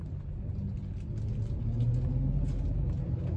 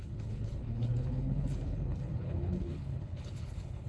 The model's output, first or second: second